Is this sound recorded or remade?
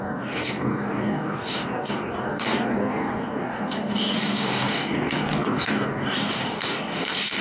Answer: remade